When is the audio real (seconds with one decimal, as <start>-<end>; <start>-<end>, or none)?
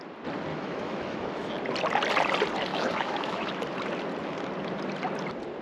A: 0.0-0.5; 1.5-2.7; 3.5-5.6